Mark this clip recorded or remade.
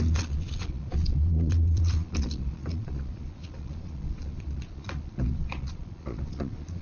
remade